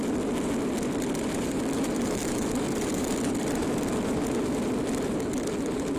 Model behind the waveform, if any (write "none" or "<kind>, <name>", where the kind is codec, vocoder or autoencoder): vocoder, BigVGAN v2